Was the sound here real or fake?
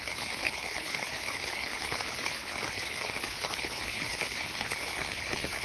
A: fake